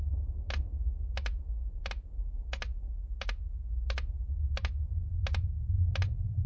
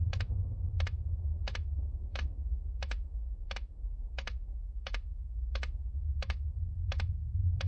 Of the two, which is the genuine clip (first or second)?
first